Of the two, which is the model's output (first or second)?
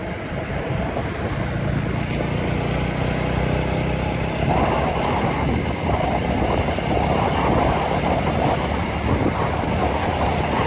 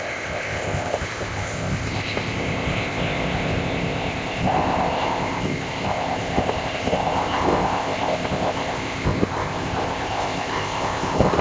second